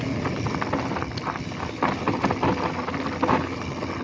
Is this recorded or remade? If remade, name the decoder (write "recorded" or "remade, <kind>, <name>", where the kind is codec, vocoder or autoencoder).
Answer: recorded